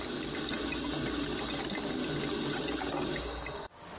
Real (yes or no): yes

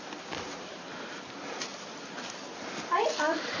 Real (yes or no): yes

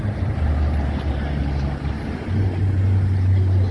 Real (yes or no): yes